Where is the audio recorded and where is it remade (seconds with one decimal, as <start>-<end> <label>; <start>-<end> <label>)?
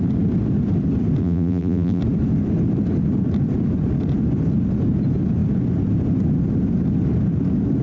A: 0.0-1.2 recorded; 1.2-2.0 remade; 2.0-7.8 recorded